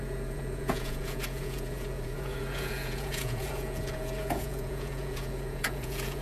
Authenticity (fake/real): fake